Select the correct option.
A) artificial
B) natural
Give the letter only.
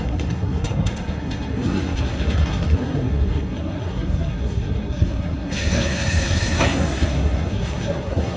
A